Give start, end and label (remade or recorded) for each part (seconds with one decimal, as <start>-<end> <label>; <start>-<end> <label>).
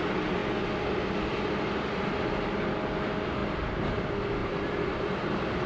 0.0-3.4 recorded; 3.4-4.0 remade; 4.0-4.4 recorded; 4.4-5.3 remade; 5.3-5.7 recorded